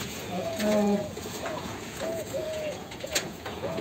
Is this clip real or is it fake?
fake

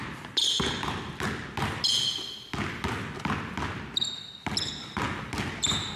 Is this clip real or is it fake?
real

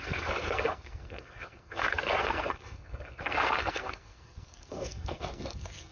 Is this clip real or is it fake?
fake